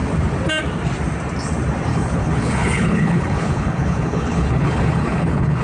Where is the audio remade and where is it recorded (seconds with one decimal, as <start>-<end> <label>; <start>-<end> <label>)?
0.0-1.9 recorded; 1.9-5.6 remade